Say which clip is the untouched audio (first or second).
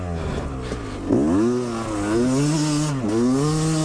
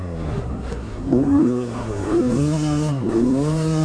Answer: first